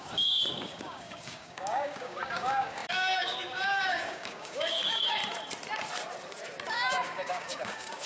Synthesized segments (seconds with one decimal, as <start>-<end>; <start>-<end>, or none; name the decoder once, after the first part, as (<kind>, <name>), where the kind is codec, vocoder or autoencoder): 0.0-5.2 (codec, DAC); 6.7-8.1